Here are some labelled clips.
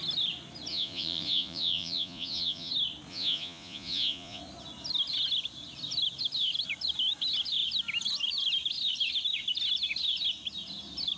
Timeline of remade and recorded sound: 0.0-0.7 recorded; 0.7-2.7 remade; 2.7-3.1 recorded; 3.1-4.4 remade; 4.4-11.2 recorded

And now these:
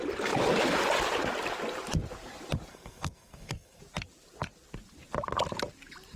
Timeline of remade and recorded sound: 0.0-2.7 recorded; 2.7-3.8 remade; 3.8-6.2 recorded

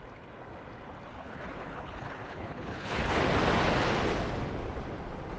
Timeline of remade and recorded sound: 0.0-1.1 recorded; 1.1-3.2 remade; 3.2-5.4 recorded

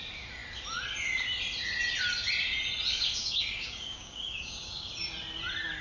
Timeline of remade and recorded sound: 0.0-3.2 recorded; 3.2-4.9 remade; 4.9-5.8 recorded

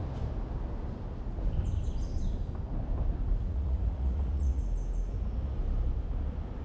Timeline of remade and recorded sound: 0.0-3.4 recorded; 3.4-4.6 remade; 4.6-6.6 recorded

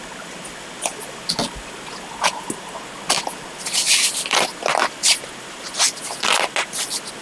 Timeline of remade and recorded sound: 0.0-7.2 recorded